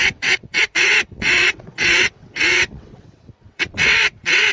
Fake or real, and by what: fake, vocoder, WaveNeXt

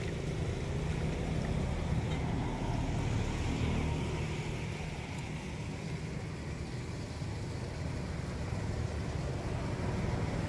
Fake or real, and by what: real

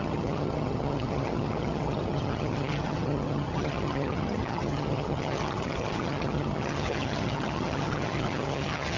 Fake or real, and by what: fake, vocoder, HiFi-GAN